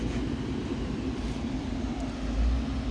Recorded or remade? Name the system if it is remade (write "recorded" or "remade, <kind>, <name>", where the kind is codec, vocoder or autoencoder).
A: recorded